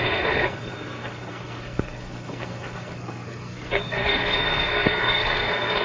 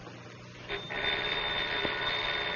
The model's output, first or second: first